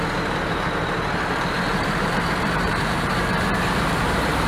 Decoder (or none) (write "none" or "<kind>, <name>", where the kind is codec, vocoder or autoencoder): vocoder, BigVGAN v2